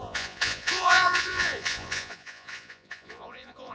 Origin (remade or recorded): remade